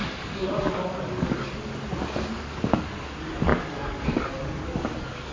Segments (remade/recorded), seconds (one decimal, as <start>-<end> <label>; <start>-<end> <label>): 0.0-1.7 remade; 1.7-2.3 recorded; 2.3-5.3 remade